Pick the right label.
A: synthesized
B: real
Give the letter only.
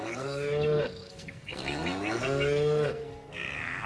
A